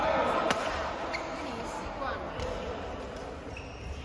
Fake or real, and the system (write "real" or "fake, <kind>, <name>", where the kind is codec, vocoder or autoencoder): real